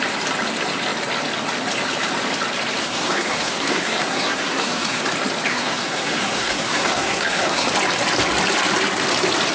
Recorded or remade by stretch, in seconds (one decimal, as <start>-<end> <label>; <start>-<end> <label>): 0.0-2.8 recorded; 2.8-5.0 remade; 5.0-5.5 recorded; 5.5-7.7 remade; 7.7-9.5 recorded